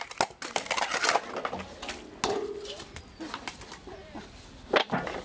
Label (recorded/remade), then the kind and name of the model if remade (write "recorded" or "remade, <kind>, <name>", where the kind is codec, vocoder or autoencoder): recorded